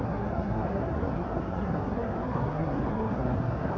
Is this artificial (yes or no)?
yes